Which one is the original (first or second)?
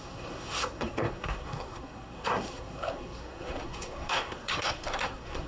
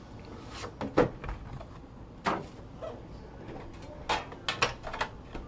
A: second